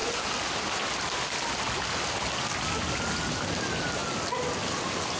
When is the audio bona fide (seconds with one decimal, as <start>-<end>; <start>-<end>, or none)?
0.0-5.2